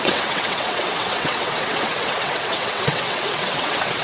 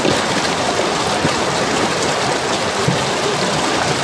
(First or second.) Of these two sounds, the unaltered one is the second